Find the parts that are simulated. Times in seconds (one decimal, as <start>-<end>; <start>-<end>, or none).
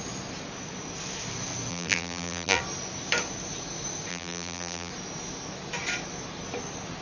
1.7-2.6; 4.1-4.9